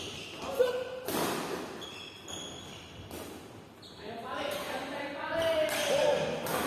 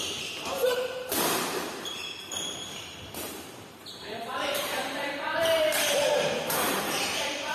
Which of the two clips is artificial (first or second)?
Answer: second